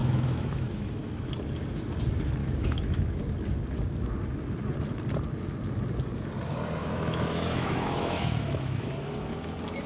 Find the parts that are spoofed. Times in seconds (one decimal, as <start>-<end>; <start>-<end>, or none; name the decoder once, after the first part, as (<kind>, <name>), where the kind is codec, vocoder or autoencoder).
0.0-1.3 (autoencoder, DAC-VAE); 2.4-3.2; 6.8-8.9